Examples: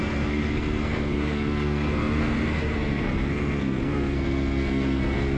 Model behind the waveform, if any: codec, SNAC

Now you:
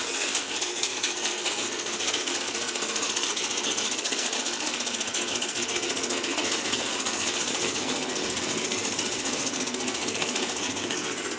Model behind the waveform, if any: codec, SNAC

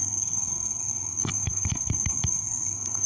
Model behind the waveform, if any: codec, SNAC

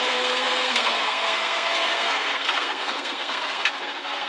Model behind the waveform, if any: codec, SNAC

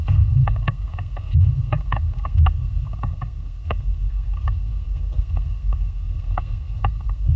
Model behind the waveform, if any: codec, SNAC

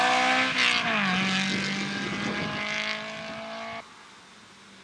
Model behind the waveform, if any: none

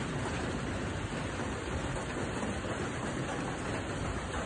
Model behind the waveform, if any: none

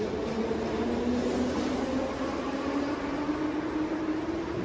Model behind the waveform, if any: none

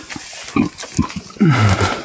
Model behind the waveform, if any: none